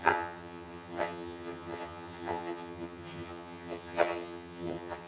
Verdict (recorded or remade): remade